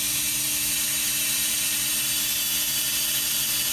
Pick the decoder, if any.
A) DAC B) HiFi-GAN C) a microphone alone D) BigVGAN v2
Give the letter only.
C